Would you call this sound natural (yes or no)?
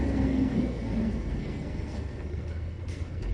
no